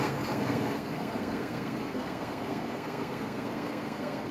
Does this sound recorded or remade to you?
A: remade